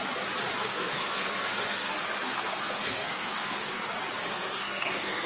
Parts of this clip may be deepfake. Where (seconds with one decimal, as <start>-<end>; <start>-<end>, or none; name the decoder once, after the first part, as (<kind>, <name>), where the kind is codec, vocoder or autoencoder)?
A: 0.6-3.8 (codec, SNAC); 4.2-5.3